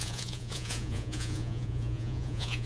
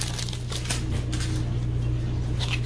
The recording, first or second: second